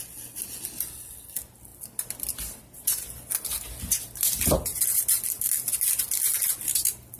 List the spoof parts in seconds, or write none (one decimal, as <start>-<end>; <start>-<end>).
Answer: none